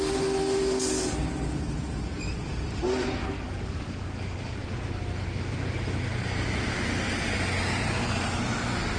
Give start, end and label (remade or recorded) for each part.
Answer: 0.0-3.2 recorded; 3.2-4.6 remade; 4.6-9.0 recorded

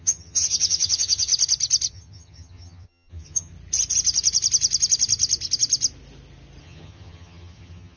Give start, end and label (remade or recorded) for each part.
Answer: 0.0-1.3 remade; 1.3-1.9 recorded; 1.9-3.5 remade; 3.5-6.6 recorded; 6.6-8.0 remade

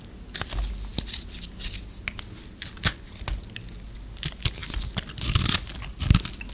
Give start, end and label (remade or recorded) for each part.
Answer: 0.0-6.5 recorded